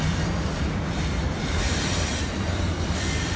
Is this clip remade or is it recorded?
recorded